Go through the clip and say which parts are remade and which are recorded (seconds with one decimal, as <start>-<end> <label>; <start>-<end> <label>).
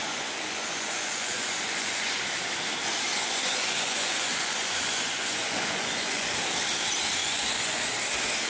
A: 0.0-2.2 remade; 2.2-3.1 recorded; 3.1-6.3 remade; 6.3-7.2 recorded; 7.2-7.8 remade; 7.8-8.5 recorded